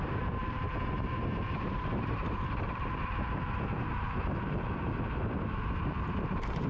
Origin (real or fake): fake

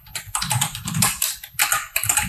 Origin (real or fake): fake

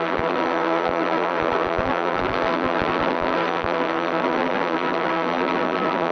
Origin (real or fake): fake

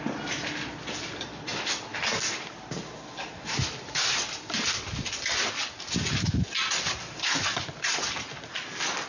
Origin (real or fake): real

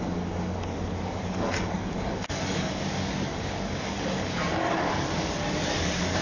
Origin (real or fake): fake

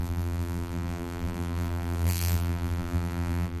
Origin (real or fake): fake